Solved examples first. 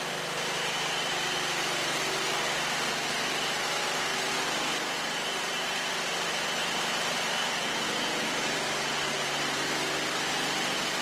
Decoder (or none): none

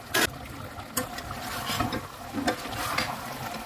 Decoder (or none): none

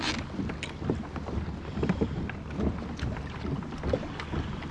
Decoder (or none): none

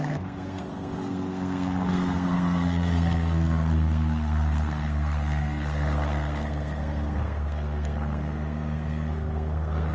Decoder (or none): codec, SNAC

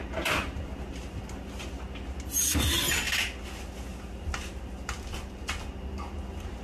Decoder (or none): none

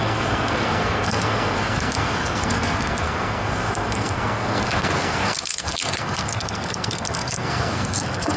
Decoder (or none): codec, SNAC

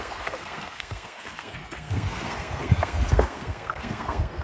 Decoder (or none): codec, SNAC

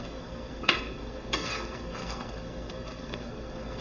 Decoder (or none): codec, SNAC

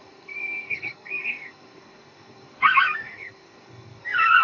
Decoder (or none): codec, SNAC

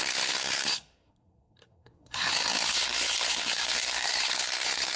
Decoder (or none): codec, SNAC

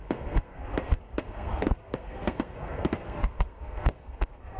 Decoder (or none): codec, SNAC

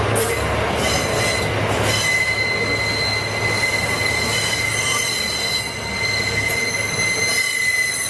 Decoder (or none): none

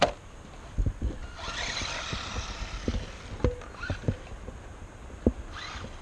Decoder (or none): none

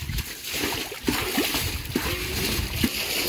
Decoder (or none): none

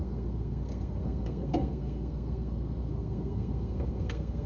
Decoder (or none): codec, SNAC